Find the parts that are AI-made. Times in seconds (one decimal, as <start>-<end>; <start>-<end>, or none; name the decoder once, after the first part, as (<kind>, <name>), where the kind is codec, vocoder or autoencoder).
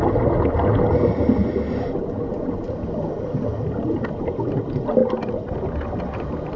none